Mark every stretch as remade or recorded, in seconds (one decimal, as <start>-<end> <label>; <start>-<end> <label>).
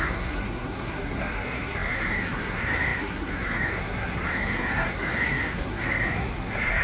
0.0-6.8 remade